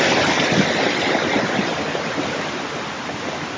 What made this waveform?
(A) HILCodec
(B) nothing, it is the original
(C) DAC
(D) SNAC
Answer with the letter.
B